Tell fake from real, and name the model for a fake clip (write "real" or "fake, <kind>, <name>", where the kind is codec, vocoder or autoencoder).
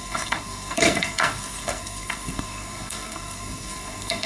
fake, codec, SNAC